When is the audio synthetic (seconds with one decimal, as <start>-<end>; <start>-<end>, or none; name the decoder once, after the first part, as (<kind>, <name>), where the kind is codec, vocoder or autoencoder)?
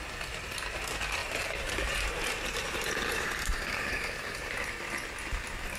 1.2-4.7 (vocoder, BigVGAN v2)